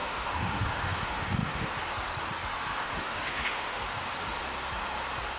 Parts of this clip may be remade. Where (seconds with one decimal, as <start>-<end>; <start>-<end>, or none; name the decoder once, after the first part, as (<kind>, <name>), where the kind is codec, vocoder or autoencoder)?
0.0-1.7 (autoencoder, DAC-VAE); 2.7-3.8